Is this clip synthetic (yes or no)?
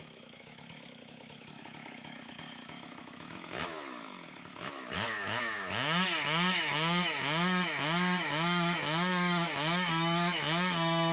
yes